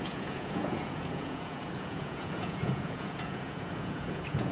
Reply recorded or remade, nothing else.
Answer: remade